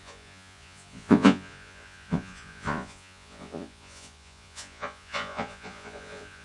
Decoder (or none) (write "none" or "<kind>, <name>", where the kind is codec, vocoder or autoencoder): vocoder, Vocos